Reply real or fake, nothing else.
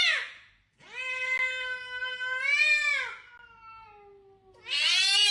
real